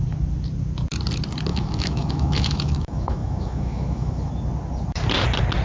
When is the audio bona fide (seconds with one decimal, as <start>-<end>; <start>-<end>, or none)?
0.0-1.5; 4.3-5.6